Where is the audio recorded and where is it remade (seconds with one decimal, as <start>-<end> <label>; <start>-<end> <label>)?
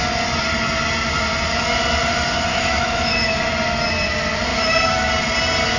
0.0-2.5 recorded; 2.5-3.4 remade; 3.4-4.5 recorded; 4.5-5.1 remade; 5.1-5.8 recorded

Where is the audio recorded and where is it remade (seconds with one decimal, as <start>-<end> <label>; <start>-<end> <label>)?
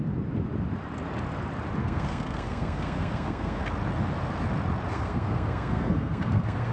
0.0-1.8 recorded; 1.8-3.6 remade; 3.6-4.9 recorded; 4.9-6.7 remade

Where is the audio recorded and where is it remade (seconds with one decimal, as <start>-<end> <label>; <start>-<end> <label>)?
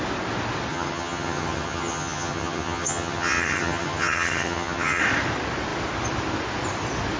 0.0-0.7 recorded; 0.7-5.0 remade; 5.0-7.2 recorded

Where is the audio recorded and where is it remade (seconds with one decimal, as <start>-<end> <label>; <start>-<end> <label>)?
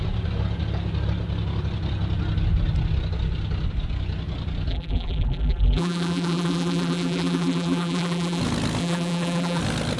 0.0-4.7 recorded; 4.7-8.4 remade; 8.4-8.8 recorded; 8.8-9.6 remade; 9.6-10.0 recorded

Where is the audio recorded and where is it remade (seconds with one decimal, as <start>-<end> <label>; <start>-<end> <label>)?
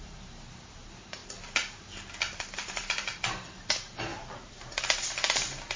0.0-1.2 remade; 1.2-2.5 recorded; 2.5-5.8 remade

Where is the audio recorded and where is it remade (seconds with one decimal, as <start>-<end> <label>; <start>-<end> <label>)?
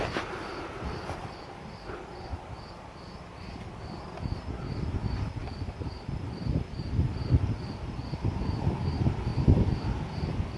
0.0-10.6 recorded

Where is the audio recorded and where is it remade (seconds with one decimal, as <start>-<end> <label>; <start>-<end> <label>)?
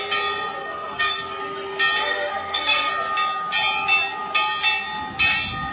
0.0-0.6 recorded; 0.6-1.4 remade; 1.4-2.0 recorded; 2.0-2.9 remade; 2.9-5.7 recorded